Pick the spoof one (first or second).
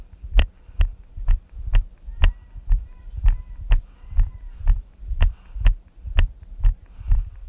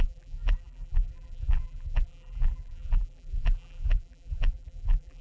second